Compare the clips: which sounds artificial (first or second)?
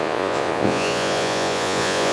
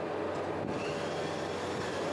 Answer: first